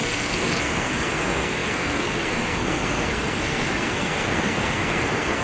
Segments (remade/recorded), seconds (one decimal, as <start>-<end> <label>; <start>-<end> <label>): 0.0-5.4 remade